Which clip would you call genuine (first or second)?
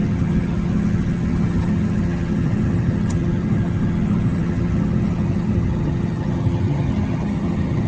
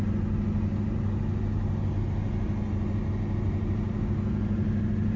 second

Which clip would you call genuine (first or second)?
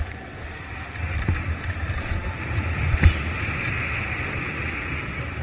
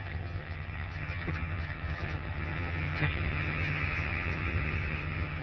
first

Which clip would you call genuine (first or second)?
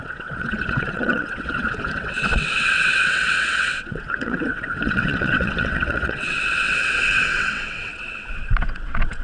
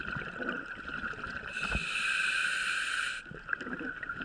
second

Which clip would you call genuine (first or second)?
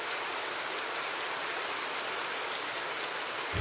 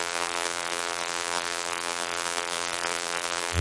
first